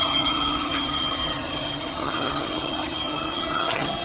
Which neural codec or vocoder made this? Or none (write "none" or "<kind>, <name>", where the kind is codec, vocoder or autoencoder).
vocoder, HiFi-GAN